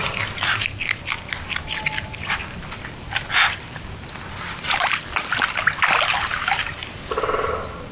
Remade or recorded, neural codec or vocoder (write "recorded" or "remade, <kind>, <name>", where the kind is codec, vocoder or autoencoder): recorded